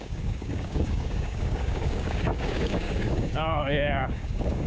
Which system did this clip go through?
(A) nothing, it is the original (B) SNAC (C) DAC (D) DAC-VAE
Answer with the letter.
C